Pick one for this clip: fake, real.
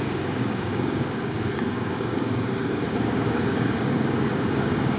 fake